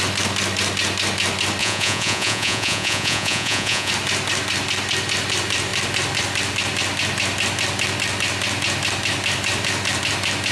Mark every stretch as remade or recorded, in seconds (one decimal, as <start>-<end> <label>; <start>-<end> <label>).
0.0-1.6 recorded; 1.6-3.9 remade; 3.9-10.5 recorded